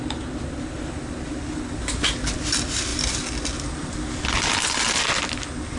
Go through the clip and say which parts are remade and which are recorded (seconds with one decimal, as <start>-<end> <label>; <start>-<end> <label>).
0.0-5.8 recorded